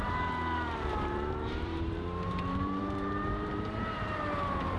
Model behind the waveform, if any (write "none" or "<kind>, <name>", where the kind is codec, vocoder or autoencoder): vocoder, BigVGAN v2